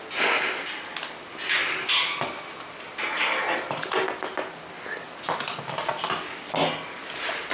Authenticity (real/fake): real